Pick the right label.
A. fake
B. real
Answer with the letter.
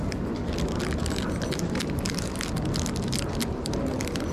B